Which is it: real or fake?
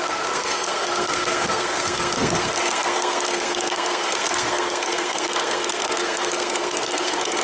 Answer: fake